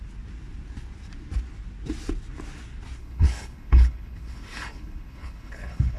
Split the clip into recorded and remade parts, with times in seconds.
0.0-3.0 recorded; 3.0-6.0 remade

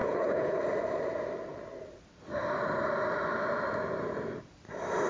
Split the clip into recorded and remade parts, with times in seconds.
0.0-0.6 remade; 0.6-5.1 recorded